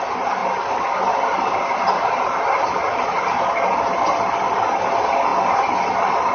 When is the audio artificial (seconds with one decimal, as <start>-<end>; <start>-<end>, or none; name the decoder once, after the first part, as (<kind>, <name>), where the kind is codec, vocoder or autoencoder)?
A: none